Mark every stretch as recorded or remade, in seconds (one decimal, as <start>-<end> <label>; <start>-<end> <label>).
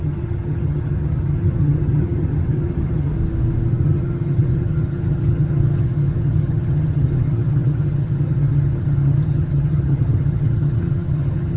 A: 0.0-3.1 remade; 3.1-3.7 recorded; 3.7-11.6 remade